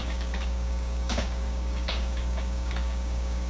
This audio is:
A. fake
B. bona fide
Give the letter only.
A